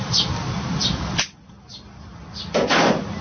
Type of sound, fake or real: real